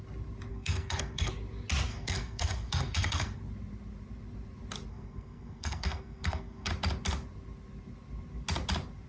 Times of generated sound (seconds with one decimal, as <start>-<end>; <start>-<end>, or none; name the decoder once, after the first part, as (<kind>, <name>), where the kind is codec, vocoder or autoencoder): 0.5-1.3 (codec, SNAC); 1.9-3.4; 4.9-6.7